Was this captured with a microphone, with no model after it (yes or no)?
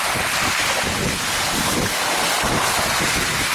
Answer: yes